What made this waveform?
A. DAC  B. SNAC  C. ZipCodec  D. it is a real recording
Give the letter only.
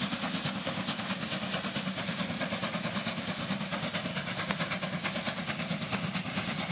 D